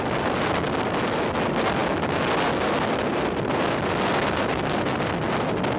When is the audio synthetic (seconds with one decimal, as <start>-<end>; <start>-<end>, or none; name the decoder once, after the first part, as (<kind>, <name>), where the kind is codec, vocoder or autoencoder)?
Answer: none